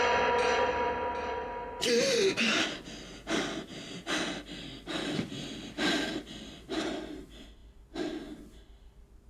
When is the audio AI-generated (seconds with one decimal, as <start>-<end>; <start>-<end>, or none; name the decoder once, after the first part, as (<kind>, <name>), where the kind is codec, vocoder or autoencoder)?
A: none